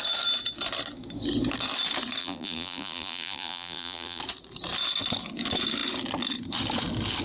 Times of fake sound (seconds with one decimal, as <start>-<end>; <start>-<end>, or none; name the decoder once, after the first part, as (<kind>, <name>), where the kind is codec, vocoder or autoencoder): 2.2-4.2 (vocoder, BigVGAN v2)